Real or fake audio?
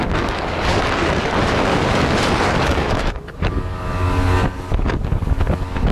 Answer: fake